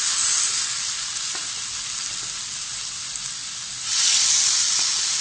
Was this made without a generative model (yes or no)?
yes